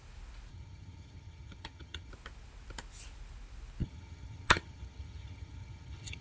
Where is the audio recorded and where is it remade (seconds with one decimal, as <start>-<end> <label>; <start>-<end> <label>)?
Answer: 0.0-0.5 recorded; 0.5-2.1 remade; 2.1-3.8 recorded; 3.8-6.2 remade